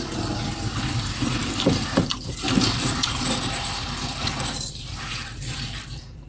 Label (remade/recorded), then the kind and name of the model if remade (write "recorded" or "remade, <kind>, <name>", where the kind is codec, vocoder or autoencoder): remade, vocoder, BigVGAN v2